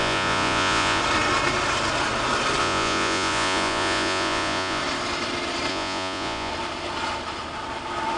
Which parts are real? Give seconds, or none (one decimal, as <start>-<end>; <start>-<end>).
1.0-2.6; 4.8-5.7; 6.5-8.2